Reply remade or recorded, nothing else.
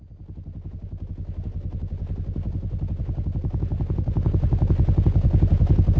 recorded